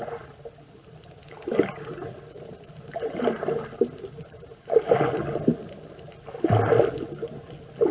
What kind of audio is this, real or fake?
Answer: real